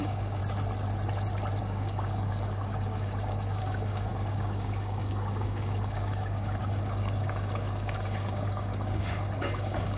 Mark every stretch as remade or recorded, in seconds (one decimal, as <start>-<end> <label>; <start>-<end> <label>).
0.0-0.4 remade; 0.4-1.6 recorded; 1.6-10.0 remade